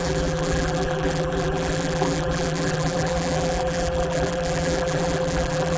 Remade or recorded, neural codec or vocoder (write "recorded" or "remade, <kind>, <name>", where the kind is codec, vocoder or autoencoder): remade, vocoder, BigVGAN v2